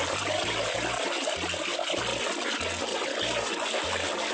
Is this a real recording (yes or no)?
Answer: yes